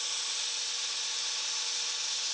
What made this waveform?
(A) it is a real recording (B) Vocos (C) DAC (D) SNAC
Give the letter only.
A